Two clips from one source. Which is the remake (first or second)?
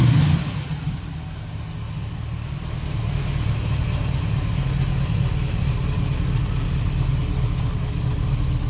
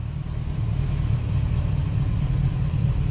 second